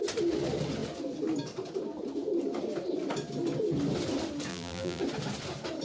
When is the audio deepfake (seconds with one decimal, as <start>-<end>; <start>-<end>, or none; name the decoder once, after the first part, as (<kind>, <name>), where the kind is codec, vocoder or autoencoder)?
4.5-5.0 (vocoder, BigVGAN v2)